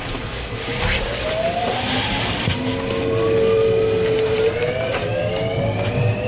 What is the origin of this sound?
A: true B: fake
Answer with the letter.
B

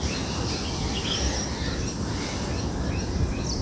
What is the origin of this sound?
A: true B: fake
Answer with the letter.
A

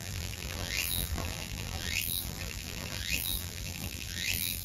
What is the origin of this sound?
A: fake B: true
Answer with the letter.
A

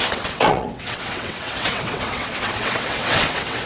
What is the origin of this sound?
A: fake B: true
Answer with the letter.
A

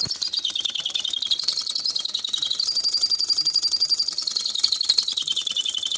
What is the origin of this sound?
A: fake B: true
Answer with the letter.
A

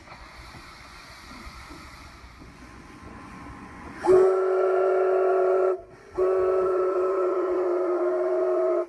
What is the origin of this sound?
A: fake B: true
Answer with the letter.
A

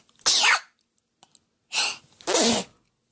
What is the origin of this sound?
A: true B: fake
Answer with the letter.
A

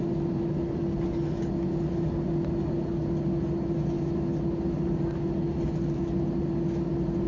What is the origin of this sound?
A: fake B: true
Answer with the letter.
B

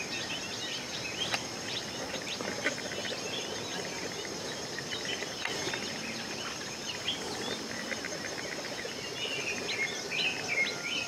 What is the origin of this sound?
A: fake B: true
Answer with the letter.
B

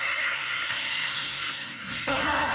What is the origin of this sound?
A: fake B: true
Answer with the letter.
A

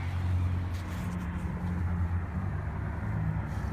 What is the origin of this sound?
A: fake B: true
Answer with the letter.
B